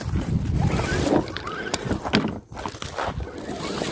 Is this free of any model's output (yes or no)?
yes